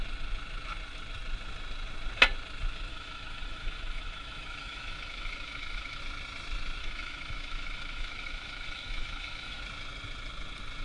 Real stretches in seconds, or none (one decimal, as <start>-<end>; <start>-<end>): 0.0-2.9; 6.0-6.8; 9.6-10.8